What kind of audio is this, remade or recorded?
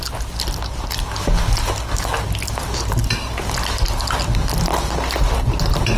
recorded